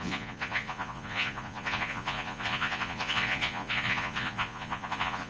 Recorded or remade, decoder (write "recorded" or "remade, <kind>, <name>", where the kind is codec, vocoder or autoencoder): remade, vocoder, Vocos